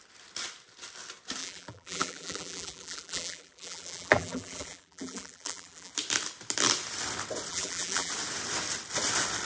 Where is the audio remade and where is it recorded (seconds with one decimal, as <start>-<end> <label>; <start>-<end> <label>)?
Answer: 0.0-1.4 recorded; 1.4-5.9 remade; 5.9-7.5 recorded; 7.5-8.1 remade; 8.1-9.5 recorded

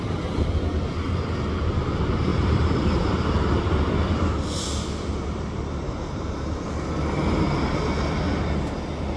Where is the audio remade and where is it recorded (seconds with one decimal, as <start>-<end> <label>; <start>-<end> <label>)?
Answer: 0.0-2.3 recorded; 2.3-3.3 remade; 3.3-5.1 recorded; 5.1-6.7 remade; 6.7-9.2 recorded